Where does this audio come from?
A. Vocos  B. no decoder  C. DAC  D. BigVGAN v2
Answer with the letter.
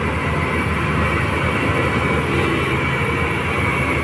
B